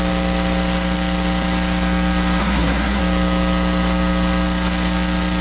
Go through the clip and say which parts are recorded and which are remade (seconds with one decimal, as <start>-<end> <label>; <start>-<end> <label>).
0.0-2.4 recorded; 2.4-3.0 remade; 3.0-5.4 recorded